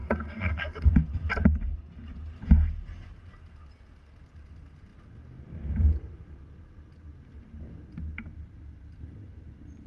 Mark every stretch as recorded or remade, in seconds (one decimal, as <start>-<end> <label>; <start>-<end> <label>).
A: 0.0-0.9 remade; 0.9-9.9 recorded